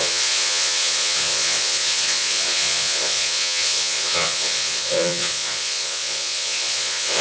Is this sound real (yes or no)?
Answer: no